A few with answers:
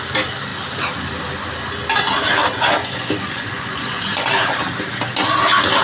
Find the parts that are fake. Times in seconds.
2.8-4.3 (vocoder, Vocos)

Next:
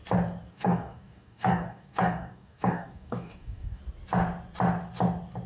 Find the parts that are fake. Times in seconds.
0.5-3.8 (codec, DAC)